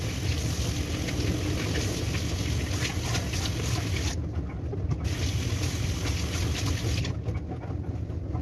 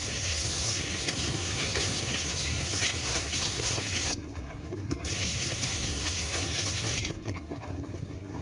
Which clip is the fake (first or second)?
second